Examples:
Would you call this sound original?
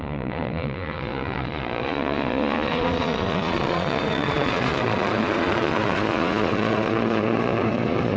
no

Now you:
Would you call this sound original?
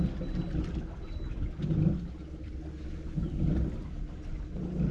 yes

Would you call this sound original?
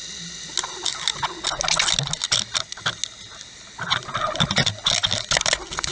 yes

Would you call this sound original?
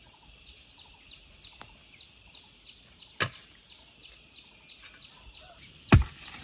yes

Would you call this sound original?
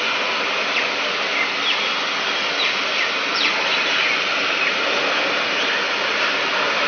yes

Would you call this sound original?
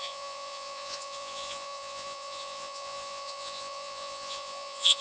no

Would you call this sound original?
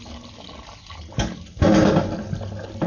yes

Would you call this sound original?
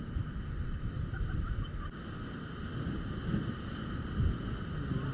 yes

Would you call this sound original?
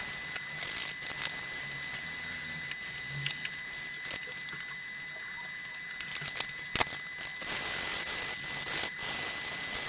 yes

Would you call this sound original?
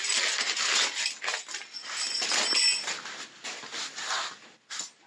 yes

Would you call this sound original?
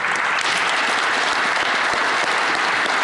yes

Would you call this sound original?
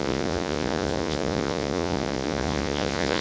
no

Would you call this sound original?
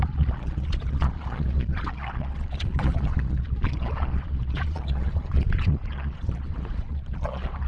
no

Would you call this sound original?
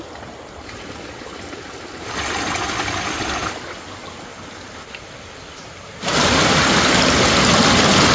yes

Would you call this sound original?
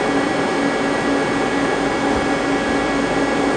yes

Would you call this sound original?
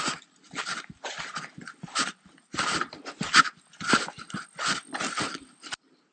yes